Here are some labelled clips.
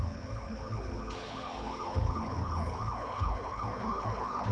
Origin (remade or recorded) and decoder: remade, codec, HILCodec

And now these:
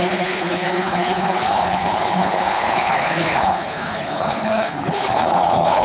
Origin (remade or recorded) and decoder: remade, codec, HILCodec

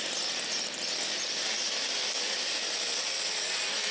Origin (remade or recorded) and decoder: recorded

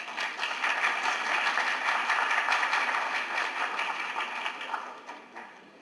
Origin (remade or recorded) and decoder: recorded